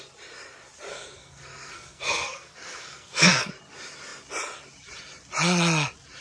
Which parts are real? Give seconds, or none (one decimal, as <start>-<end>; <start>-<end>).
0.0-0.9; 3.5-6.2